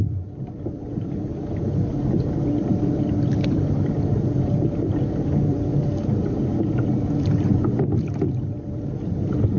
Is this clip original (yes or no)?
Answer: no